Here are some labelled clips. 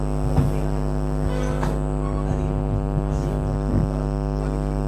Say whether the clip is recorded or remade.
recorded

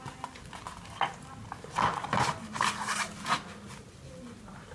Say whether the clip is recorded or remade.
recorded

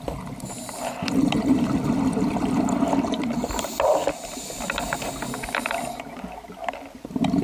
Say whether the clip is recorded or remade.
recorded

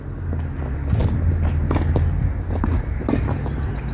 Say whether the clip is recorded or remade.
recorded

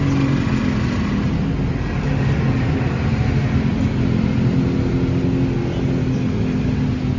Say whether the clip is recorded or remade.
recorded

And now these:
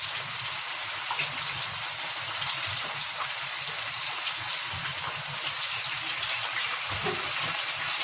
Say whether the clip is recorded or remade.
remade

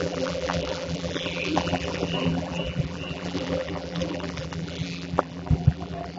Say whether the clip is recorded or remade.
remade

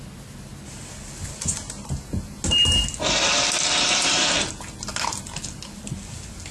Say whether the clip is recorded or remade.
recorded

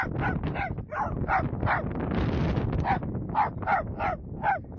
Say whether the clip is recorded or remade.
recorded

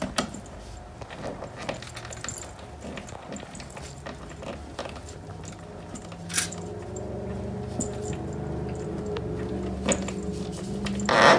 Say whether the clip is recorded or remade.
recorded